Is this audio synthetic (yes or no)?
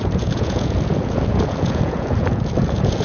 yes